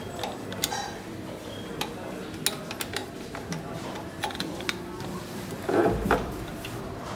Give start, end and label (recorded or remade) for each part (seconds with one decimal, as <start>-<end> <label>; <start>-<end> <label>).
0.0-1.7 remade; 1.7-2.5 recorded; 2.5-7.2 remade